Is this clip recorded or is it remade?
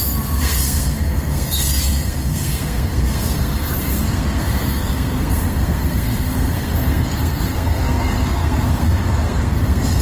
remade